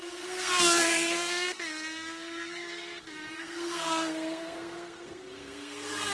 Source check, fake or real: fake